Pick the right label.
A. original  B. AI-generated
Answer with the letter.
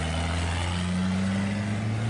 A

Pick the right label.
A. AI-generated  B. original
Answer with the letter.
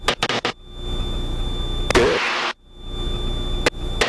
B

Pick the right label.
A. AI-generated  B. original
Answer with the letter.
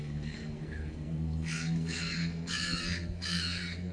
A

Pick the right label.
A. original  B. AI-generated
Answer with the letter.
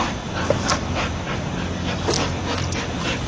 A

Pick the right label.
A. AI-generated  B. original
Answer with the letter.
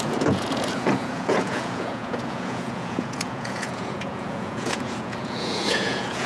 A